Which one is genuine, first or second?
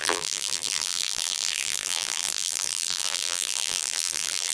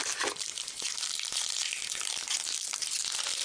second